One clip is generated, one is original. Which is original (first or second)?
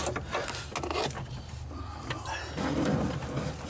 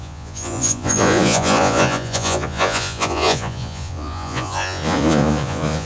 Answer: first